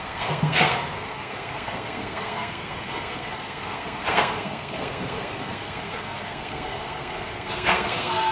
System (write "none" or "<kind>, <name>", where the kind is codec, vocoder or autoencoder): codec, SNAC